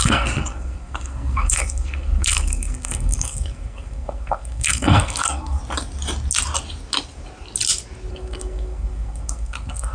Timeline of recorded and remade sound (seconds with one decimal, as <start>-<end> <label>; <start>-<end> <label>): 0.0-5.6 remade; 5.6-8.1 recorded; 8.1-9.9 remade